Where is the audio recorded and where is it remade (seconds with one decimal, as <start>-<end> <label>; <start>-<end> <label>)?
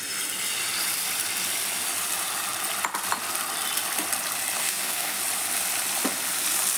0.0-4.6 recorded; 4.6-5.2 remade; 5.2-6.8 recorded